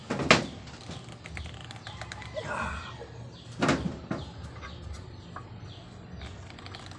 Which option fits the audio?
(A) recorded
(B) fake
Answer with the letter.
A